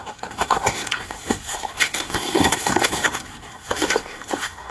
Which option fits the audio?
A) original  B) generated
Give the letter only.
B